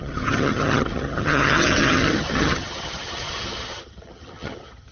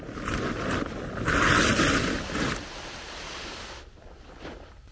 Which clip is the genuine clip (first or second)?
second